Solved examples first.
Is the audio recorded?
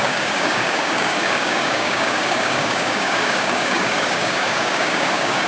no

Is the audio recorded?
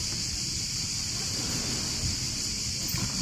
no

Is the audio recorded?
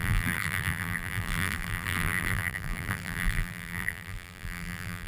no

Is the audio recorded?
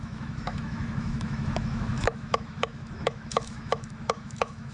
no